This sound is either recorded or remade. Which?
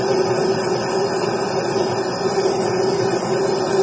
recorded